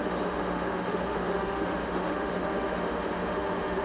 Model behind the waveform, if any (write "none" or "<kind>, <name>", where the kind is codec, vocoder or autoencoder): autoencoder, DAC-VAE